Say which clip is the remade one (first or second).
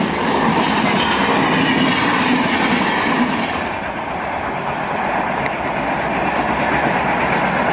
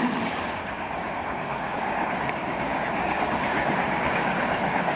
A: second